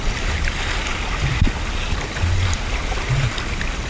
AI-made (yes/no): no